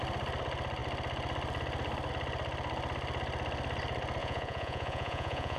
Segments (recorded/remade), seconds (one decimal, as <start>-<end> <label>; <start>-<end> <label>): 0.0-4.2 recorded; 4.2-5.6 remade